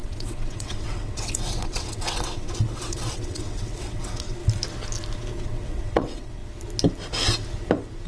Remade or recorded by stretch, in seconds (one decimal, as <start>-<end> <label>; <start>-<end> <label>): 0.0-4.4 remade; 4.4-5.4 recorded; 5.4-6.4 remade; 6.4-8.1 recorded

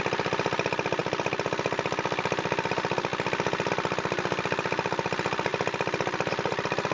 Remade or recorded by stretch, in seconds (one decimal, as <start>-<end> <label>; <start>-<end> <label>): 0.0-6.9 recorded

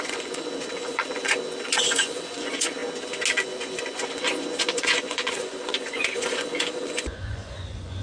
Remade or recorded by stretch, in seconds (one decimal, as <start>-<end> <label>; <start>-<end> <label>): 0.0-2.8 remade; 2.8-3.4 recorded; 3.4-8.0 remade

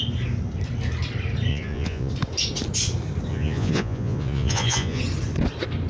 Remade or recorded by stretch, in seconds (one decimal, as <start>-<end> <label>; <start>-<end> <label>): 0.0-1.5 recorded; 1.5-2.1 remade; 2.1-3.3 recorded; 3.3-5.0 remade; 5.0-5.9 recorded